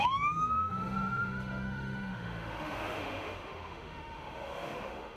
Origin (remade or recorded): remade